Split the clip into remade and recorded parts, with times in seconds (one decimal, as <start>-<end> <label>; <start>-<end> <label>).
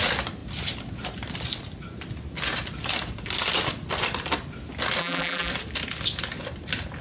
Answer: 0.0-5.0 recorded; 5.0-5.5 remade; 5.5-7.0 recorded